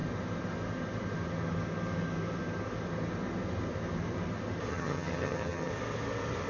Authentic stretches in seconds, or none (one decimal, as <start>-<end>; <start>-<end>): 0.0-4.7; 5.7-6.5